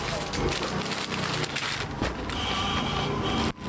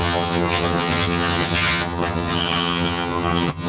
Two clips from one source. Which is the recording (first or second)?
first